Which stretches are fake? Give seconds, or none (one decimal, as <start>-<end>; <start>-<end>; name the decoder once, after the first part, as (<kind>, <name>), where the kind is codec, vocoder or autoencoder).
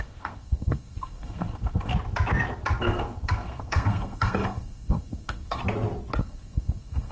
0.0-1.9 (codec, SNAC); 2.8-5.6; 6.2-7.1